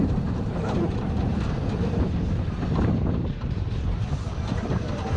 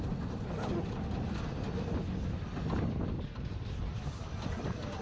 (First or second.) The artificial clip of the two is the first